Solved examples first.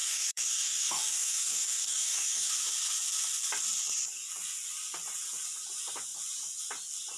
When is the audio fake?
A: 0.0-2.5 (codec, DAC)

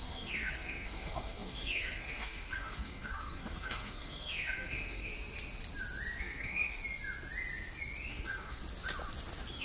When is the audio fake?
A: 0.0-5.1 (codec, SNAC); 6.2-6.8; 8.1-8.6

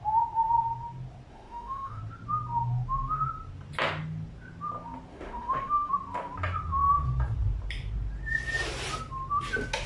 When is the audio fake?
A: 1.3-2.0 (autoencoder, DAC-VAE); 5.1-5.9

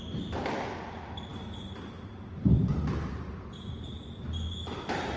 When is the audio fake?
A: none

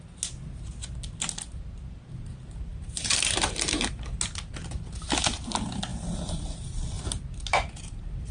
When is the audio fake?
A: 2.7-4.0 (vocoder, BigVGAN v2); 5.9-6.8; 7.5-8.3

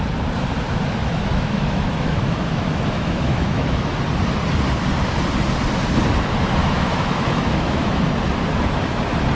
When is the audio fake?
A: 1.0-4.0 (autoencoder, DAC-VAE); 6.6-7.9

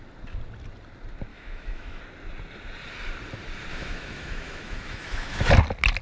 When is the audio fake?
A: 1.3-2.0 (autoencoder, DAC-VAE); 3.7-5.5

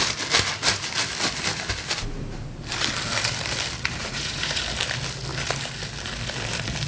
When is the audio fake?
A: 4.0-4.6 (vocoder, Vocos)